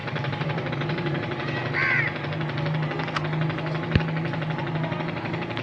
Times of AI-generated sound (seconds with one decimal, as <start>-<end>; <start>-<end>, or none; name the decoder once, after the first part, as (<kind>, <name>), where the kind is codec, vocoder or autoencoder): 0.0-1.6 (vocoder, BigVGAN v2); 5.0-5.6